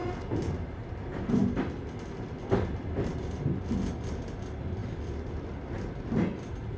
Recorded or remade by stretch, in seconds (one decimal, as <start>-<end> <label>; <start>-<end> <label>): 0.0-0.9 recorded; 0.9-6.8 remade